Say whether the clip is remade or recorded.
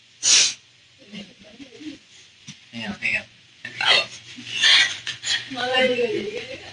remade